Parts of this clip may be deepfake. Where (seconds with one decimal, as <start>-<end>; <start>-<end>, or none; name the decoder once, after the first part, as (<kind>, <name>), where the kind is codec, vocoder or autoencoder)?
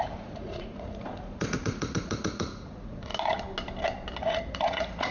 0.0-3.1 (vocoder, Vocos); 4.2-5.1